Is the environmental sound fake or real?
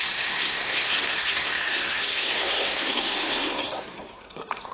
fake